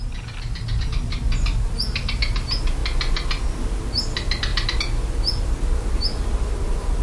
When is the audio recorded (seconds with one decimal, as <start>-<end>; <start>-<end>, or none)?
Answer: 0.0-7.0